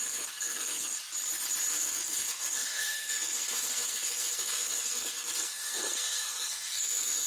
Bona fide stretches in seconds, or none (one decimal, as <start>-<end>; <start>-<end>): 0.9-1.7